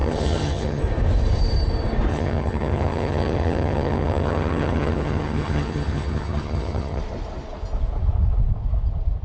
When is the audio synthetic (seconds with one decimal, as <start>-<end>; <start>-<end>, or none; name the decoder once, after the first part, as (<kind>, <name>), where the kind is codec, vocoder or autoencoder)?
0.0-0.8 (vocoder, HiFi-GAN); 2.1-7.0